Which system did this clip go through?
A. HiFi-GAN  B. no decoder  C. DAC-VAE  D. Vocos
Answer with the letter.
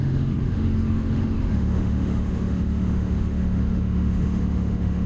C